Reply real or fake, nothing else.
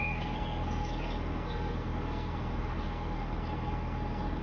fake